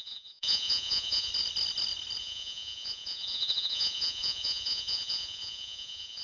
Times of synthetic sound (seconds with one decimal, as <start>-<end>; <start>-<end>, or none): 0.0-1.3; 2.2-6.2